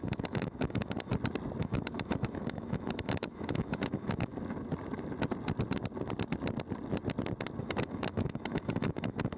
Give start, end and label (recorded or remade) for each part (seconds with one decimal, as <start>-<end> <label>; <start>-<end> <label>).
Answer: 0.0-1.1 remade; 1.1-1.6 recorded; 1.6-4.3 remade; 4.3-7.6 recorded; 7.6-9.4 remade

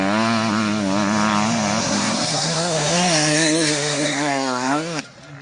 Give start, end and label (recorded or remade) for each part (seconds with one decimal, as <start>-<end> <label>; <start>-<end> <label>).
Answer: 0.0-1.8 recorded; 1.8-5.0 remade; 5.0-5.4 recorded

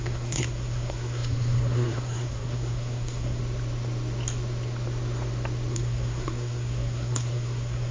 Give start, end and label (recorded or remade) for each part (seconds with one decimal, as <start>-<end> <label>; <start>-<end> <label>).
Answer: 0.0-3.4 remade; 3.4-5.7 recorded; 5.7-7.9 remade

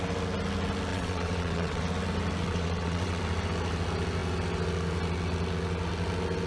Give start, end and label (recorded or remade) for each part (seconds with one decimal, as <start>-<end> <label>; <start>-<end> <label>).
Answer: 0.0-0.9 recorded; 0.9-1.8 remade; 1.8-2.4 recorded; 2.4-3.2 remade; 3.2-6.5 recorded

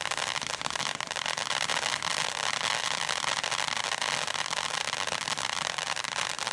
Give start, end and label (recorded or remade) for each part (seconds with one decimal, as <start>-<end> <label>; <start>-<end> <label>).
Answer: 0.0-6.5 recorded

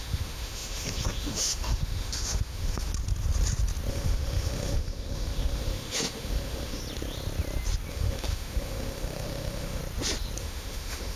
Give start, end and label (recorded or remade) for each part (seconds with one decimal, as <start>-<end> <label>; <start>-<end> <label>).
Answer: 0.0-2.9 remade; 2.9-3.9 recorded; 3.9-6.8 remade; 6.8-7.9 recorded; 7.9-9.8 remade; 9.8-10.4 recorded; 10.4-11.2 remade

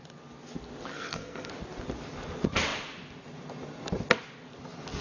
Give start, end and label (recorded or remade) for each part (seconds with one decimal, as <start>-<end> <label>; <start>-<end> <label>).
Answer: 0.0-0.9 recorded; 0.9-1.5 remade; 1.5-5.0 recorded